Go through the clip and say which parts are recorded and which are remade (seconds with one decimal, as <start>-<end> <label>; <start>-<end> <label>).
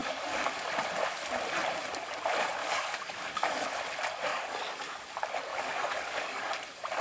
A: 0.0-0.5 remade; 0.5-2.6 recorded; 2.6-3.5 remade; 3.5-4.3 recorded; 4.3-5.1 remade; 5.1-5.5 recorded; 5.5-6.5 remade; 6.5-7.0 recorded